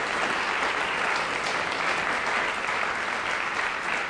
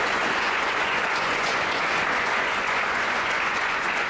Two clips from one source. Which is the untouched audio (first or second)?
first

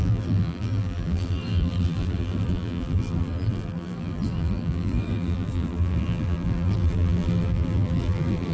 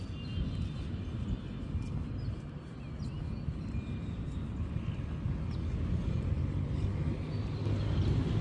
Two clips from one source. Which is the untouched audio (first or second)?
second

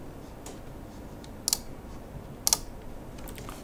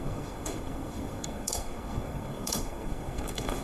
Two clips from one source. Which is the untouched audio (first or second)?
first